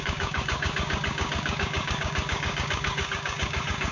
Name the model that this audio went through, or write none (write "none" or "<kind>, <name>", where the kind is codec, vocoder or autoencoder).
codec, DAC